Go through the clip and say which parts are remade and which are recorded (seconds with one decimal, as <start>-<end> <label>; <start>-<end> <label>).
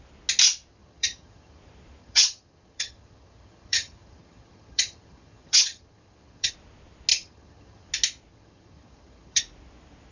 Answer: 0.0-0.7 recorded; 0.7-1.6 remade; 1.6-2.0 recorded; 2.0-6.5 remade; 6.5-7.1 recorded; 7.1-7.9 remade; 7.9-8.3 recorded; 8.3-9.4 remade; 9.4-10.1 recorded